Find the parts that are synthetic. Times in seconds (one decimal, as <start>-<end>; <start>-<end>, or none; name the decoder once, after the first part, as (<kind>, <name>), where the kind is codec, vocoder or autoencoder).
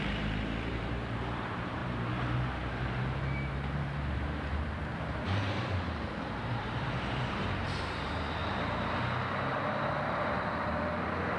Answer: 0.0-8.4 (vocoder, BigVGAN v2); 10.2-11.4